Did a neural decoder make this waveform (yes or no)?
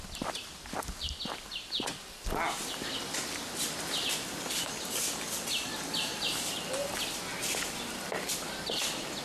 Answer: no